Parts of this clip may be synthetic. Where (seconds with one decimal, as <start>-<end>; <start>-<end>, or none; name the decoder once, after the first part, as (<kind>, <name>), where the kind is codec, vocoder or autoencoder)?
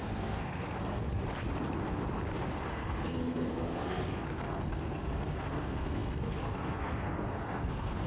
0.0-1.0 (codec, SNAC); 2.7-8.1